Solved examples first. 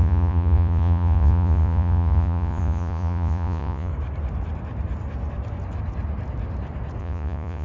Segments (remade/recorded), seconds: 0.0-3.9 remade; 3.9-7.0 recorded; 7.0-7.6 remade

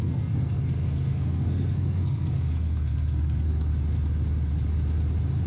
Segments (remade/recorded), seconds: 0.0-3.7 remade; 3.7-5.5 recorded

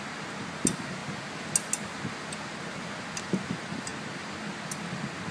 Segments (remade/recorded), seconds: 0.0-5.3 recorded

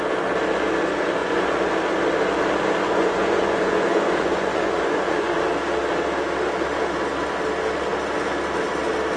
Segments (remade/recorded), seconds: 0.0-1.2 recorded; 1.2-1.7 remade; 1.7-2.8 recorded; 2.8-5.5 remade; 5.5-9.2 recorded

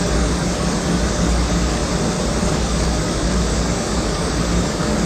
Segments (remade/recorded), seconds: 0.0-1.8 remade; 1.8-2.4 recorded; 2.4-5.1 remade

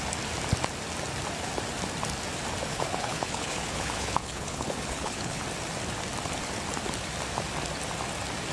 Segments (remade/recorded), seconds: 0.0-2.7 recorded; 2.7-5.4 remade; 5.4-8.5 recorded

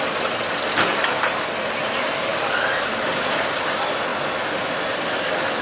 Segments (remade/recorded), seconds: 0.0-5.6 recorded